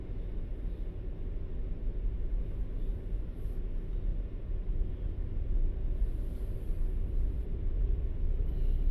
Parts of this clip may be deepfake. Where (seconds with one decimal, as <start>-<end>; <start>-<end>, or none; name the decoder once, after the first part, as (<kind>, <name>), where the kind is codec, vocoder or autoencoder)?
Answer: 1.9-2.4 (vocoder, BigVGAN v2); 4.1-4.9